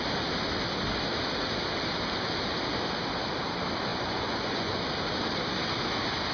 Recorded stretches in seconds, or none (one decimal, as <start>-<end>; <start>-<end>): 0.0-3.9; 4.8-6.3